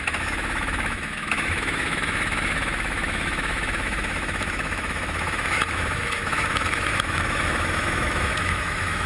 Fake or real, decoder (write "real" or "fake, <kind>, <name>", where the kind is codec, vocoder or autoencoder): fake, autoencoder, DAC-VAE